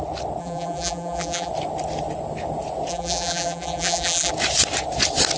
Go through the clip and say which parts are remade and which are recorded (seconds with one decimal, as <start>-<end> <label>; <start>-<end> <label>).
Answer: 0.0-0.4 recorded; 0.4-1.5 remade; 1.5-2.9 recorded; 2.9-4.3 remade; 4.3-5.4 recorded